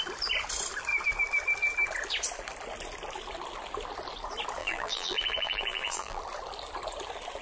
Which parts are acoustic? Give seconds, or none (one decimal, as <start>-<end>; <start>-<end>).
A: 0.0-4.6; 6.2-7.4